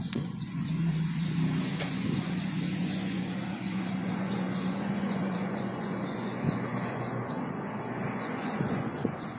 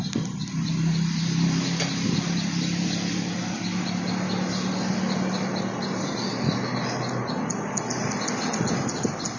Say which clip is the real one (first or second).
second